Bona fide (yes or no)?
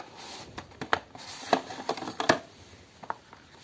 yes